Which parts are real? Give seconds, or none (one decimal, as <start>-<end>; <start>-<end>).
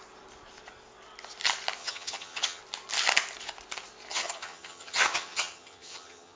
0.0-1.8; 2.6-4.1